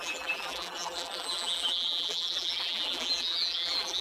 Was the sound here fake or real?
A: fake